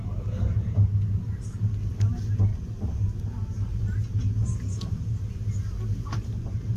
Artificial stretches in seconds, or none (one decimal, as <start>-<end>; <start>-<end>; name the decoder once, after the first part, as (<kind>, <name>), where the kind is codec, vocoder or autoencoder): none